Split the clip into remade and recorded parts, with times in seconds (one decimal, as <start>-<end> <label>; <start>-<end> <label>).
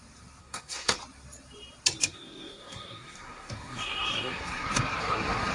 0.0-0.4 recorded; 0.4-1.0 remade; 1.0-2.0 recorded; 2.0-5.5 remade